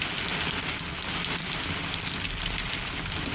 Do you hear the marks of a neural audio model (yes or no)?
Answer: no